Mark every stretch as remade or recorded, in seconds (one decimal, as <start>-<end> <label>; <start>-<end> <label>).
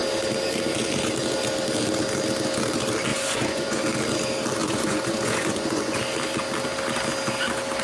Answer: 0.0-3.1 recorded; 3.1-3.8 remade; 3.8-4.6 recorded; 4.6-6.0 remade; 6.0-7.8 recorded